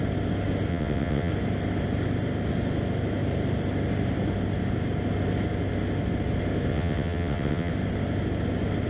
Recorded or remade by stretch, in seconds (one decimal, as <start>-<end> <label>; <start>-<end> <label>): 0.0-0.7 recorded; 0.7-1.3 remade; 1.3-6.7 recorded; 6.7-7.7 remade; 7.7-8.9 recorded

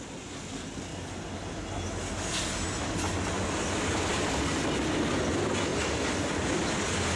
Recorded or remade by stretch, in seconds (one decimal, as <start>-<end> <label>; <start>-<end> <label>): 0.0-7.2 recorded

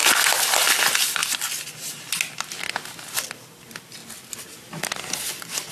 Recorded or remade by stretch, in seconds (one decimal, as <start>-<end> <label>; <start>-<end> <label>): 0.0-5.7 recorded

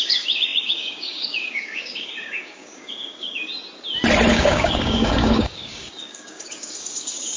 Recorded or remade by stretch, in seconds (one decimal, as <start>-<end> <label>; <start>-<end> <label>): 0.0-3.5 remade; 3.5-4.3 recorded; 4.3-7.4 remade